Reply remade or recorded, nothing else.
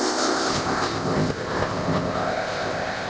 remade